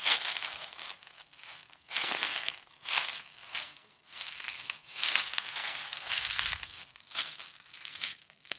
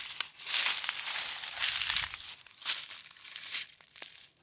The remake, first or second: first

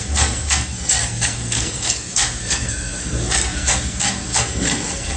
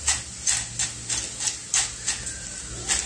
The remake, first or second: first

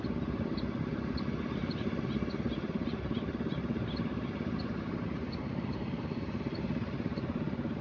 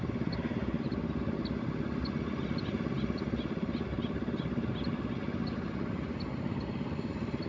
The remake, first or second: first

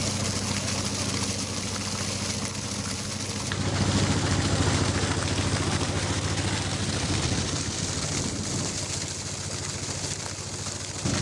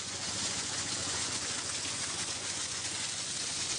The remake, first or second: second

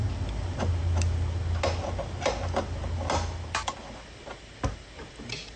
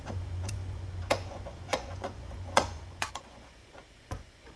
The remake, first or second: second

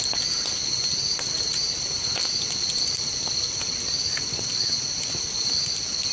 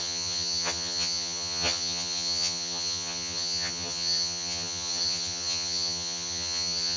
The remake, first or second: second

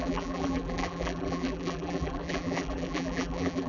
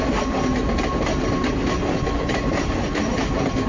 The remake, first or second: first